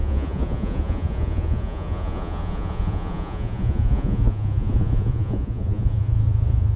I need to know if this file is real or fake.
fake